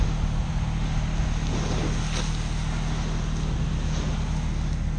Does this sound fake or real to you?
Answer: real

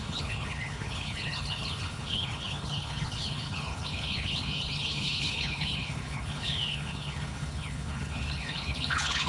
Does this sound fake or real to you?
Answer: fake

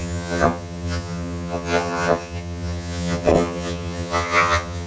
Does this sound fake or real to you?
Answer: fake